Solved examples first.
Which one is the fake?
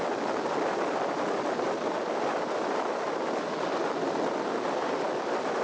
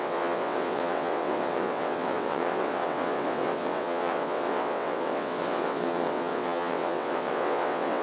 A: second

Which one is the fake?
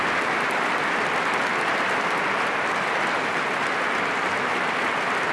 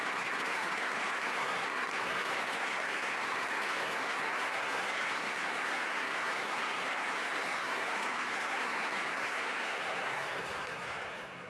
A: second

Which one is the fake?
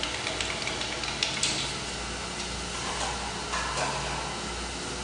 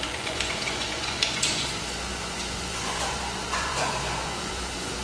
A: second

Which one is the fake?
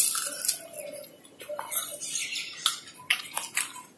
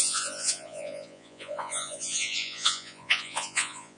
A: second